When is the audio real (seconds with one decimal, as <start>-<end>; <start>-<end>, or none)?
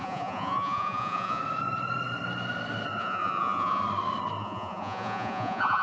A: 1.4-3.0; 3.8-4.4